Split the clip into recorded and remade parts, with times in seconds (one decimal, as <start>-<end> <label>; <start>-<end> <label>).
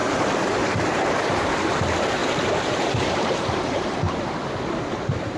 0.0-1.8 remade; 1.8-2.2 recorded; 2.2-5.4 remade